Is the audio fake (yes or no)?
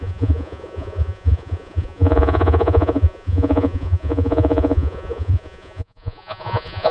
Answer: yes